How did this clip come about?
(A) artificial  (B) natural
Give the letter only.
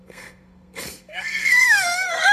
A